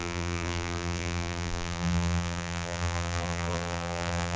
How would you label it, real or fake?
fake